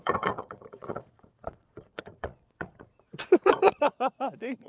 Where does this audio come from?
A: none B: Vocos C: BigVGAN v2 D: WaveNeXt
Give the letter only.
B